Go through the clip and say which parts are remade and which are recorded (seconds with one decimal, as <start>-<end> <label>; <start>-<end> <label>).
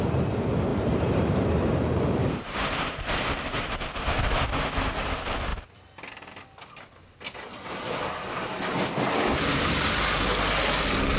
0.0-0.7 recorded; 0.7-1.4 remade; 1.4-2.2 recorded; 2.2-3.8 remade; 3.8-11.2 recorded